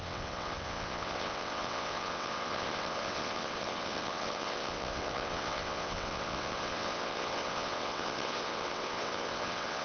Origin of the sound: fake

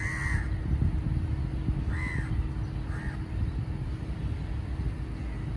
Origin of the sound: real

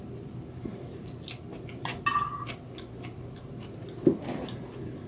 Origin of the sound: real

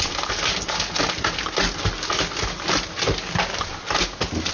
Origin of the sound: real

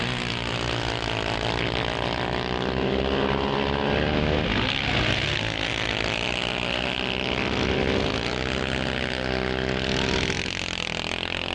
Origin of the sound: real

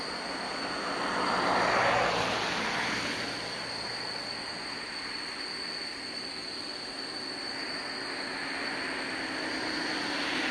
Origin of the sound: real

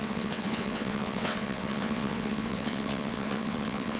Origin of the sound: fake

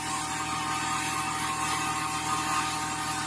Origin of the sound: real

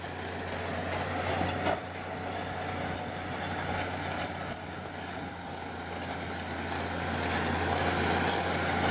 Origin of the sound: real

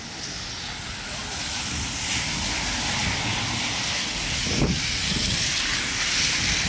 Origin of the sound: real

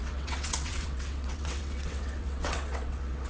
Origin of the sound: fake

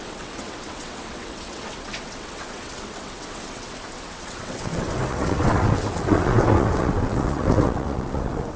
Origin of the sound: fake